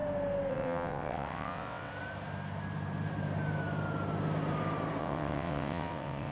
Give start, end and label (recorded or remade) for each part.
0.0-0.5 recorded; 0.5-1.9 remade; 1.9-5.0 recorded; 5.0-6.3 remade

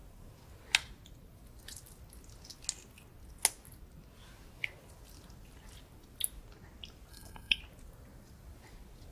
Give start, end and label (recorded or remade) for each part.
0.0-7.1 recorded; 7.1-7.6 remade; 7.6-9.1 recorded

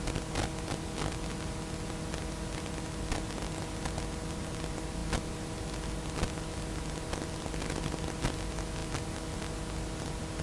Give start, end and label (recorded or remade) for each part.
0.0-10.4 recorded

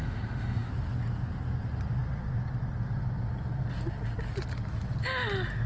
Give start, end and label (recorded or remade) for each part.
0.0-0.7 remade; 0.7-5.7 recorded

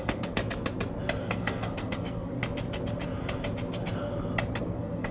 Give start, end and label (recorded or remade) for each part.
0.0-0.4 remade; 0.4-1.2 recorded; 1.2-2.4 remade; 2.4-4.6 recorded; 4.6-5.1 remade

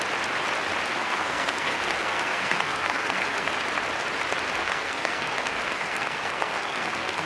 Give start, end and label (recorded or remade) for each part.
0.0-0.9 recorded; 0.9-3.5 remade; 3.5-4.6 recorded; 4.6-7.3 remade

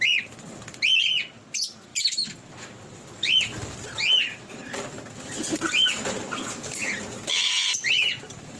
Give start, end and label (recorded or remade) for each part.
0.0-8.6 recorded